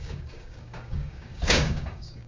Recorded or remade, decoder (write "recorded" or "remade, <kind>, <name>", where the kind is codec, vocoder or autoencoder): remade, codec, DAC